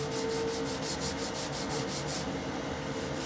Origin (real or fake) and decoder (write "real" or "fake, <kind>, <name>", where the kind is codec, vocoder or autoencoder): real